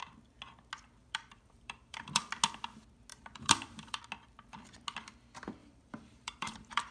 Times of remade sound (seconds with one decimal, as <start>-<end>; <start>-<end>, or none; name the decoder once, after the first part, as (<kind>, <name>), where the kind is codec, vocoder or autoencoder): 1.0-2.3 (vocoder, BigVGAN v2); 3.1-4.0; 5.6-6.9

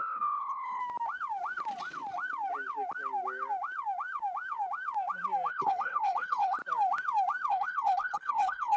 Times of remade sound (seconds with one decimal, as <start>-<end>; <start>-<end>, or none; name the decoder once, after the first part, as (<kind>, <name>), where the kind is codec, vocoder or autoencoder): 0.0-0.8 (codec, HILCodec); 5.5-6.6; 7.5-8.8

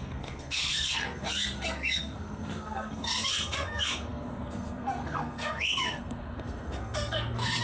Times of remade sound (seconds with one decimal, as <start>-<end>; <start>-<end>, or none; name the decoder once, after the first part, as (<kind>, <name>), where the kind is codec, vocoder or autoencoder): 0.0-7.6 (codec, SNAC)

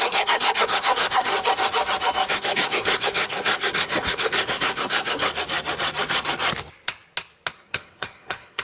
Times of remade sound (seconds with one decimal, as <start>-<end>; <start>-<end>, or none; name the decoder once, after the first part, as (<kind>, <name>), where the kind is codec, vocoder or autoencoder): 0.0-1.3 (codec, SNAC); 2.3-5.3; 7.5-8.6

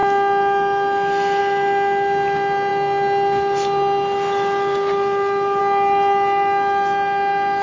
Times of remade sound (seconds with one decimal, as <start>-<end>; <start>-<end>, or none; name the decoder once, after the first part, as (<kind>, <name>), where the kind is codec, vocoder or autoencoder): none

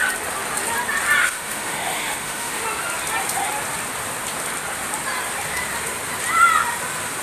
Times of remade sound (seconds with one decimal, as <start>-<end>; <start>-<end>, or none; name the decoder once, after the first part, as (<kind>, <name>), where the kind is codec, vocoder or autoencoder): 1.2-2.6 (autoencoder, DAC-VAE)

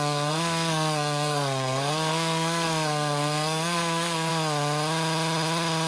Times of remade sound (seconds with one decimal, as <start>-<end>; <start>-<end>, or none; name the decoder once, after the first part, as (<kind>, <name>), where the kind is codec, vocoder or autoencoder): 0.0-4.3 (codec, SNAC)